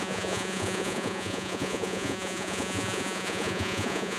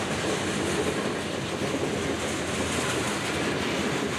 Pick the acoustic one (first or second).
second